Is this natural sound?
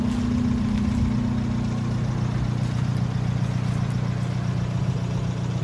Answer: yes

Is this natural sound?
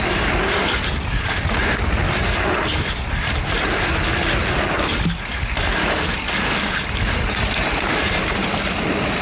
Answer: yes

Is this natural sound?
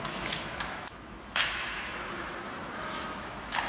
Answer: no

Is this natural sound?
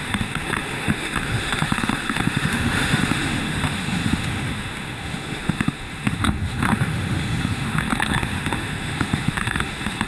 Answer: no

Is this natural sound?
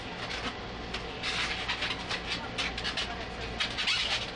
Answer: yes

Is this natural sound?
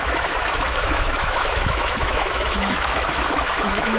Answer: no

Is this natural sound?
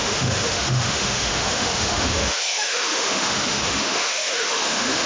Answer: no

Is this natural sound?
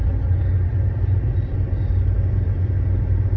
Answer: yes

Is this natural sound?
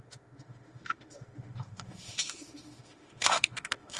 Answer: no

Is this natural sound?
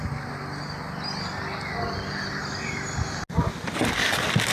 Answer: yes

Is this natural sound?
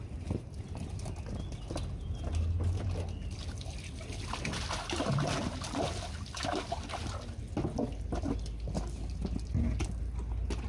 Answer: yes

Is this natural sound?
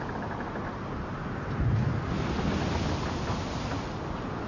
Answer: yes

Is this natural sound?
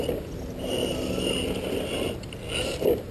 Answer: yes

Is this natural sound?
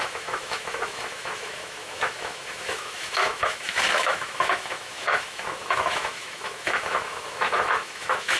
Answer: no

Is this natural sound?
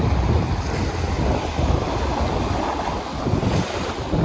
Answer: yes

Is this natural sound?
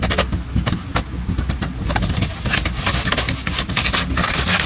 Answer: yes